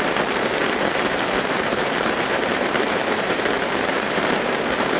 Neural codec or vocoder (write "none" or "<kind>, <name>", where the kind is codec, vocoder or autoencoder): vocoder, BigVGAN v2